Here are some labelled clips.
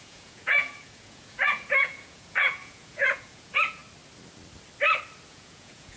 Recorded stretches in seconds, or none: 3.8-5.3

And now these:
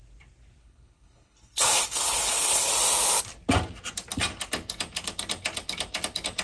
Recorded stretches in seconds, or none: 0.0-0.6; 2.7-6.4

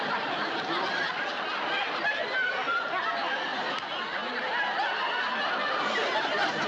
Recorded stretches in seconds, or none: 0.0-6.7

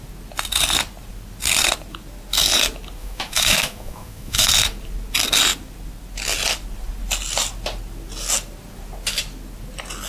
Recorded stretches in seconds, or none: 0.0-3.0; 4.5-10.1

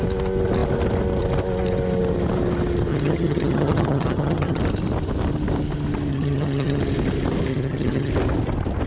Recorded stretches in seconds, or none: 0.0-2.9; 4.6-6.1; 6.8-7.5; 8.1-8.9

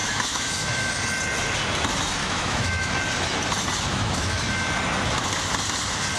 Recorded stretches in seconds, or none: 0.9-2.2; 2.9-3.9; 4.5-6.2